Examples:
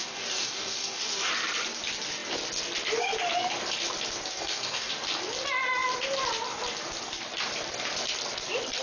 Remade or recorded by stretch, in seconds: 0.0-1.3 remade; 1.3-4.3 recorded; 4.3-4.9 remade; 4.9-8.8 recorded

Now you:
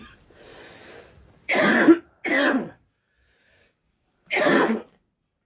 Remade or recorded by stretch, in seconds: 0.0-2.9 recorded; 2.9-4.4 remade; 4.4-5.5 recorded

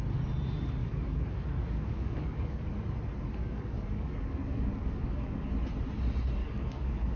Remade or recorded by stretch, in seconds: 0.0-0.8 recorded; 0.8-2.7 remade; 2.7-3.4 recorded; 3.4-5.5 remade; 5.5-6.4 recorded; 6.4-7.2 remade

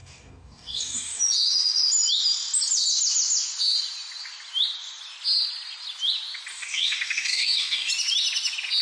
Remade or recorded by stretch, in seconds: 0.0-1.2 remade; 1.2-6.5 recorded; 6.5-7.9 remade; 7.9-8.8 recorded

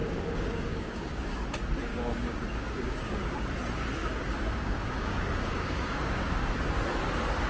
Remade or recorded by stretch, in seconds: 0.0-1.4 remade; 1.4-1.9 recorded; 1.9-3.5 remade; 3.5-4.0 recorded; 4.0-6.5 remade; 6.5-7.5 recorded

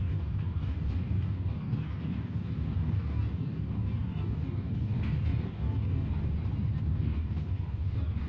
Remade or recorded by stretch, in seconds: 0.0-6.2 remade; 6.2-6.8 recorded; 6.8-8.3 remade

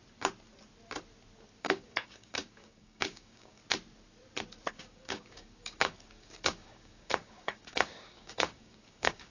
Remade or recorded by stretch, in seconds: 0.0-1.6 recorded; 1.6-3.6 remade; 3.6-4.7 recorded; 4.7-9.3 remade

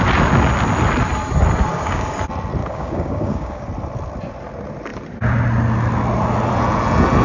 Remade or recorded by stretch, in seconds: 0.0-1.7 recorded; 1.7-2.2 remade; 2.2-2.6 recorded; 2.6-3.7 remade; 3.7-7.2 recorded